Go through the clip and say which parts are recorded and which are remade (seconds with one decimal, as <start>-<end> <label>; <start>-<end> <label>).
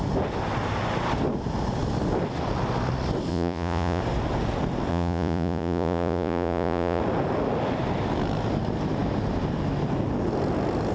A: 0.0-3.3 recorded; 3.3-4.0 remade; 4.0-4.9 recorded; 4.9-7.0 remade; 7.0-10.9 recorded